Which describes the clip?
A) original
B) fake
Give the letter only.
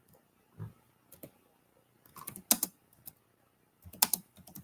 A